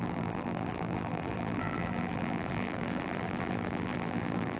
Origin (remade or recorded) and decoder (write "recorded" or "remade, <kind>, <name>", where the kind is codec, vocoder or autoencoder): remade, vocoder, BigVGAN v2